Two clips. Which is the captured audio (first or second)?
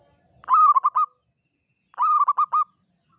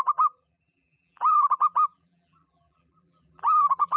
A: first